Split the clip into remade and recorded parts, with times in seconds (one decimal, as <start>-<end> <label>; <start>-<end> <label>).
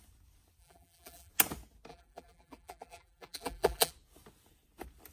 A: 0.0-0.6 recorded; 0.6-1.3 remade; 1.3-1.9 recorded; 1.9-3.9 remade; 3.9-5.1 recorded